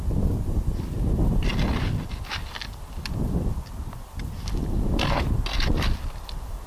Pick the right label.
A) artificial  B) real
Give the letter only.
B